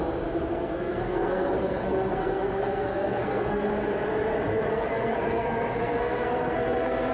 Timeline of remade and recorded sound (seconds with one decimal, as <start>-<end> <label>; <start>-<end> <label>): 0.0-0.5 recorded; 0.5-3.7 remade; 3.7-4.7 recorded; 4.7-7.1 remade